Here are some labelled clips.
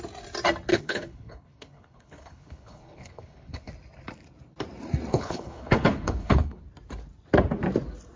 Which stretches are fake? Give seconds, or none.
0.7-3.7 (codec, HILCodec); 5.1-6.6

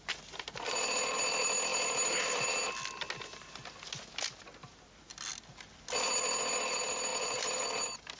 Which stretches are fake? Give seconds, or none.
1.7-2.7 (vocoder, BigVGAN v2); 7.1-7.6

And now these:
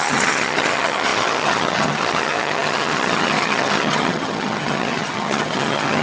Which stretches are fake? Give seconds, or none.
0.0-6.0 (vocoder, HiFi-GAN)

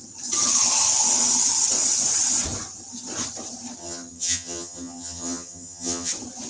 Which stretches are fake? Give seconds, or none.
3.8-6.1 (vocoder, HiFi-GAN)

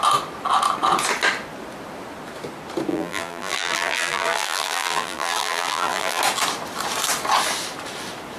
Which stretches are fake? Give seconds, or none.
2.9-6.2 (vocoder, BigVGAN v2)